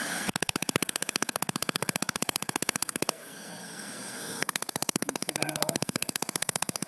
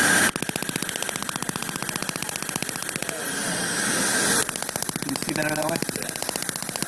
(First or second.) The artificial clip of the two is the first